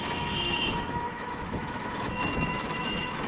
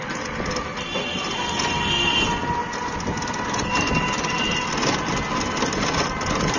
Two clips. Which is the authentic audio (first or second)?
second